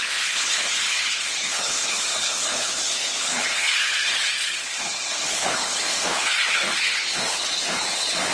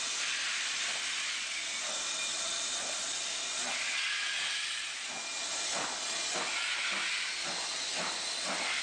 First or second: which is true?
second